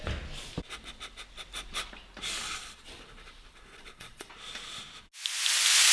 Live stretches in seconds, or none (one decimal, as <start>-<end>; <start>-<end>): 0.0-2.4; 4.3-5.9